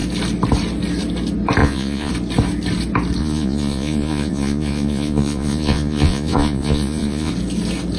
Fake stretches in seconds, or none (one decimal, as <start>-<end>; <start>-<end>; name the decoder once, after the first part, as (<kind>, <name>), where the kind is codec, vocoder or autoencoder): 1.6-2.1 (vocoder, Vocos); 3.2-7.3